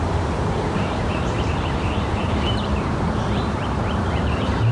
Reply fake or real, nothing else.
fake